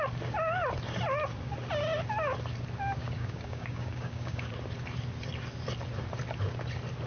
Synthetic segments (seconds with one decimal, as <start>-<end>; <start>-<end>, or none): 3.0-4.5